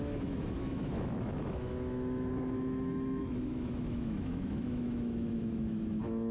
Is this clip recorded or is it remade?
remade